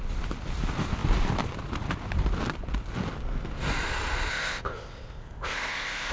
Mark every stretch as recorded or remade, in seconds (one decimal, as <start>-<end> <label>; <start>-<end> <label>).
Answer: 0.0-4.3 recorded; 4.3-6.1 remade